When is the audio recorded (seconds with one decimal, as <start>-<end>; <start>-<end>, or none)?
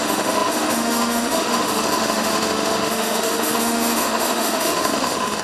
none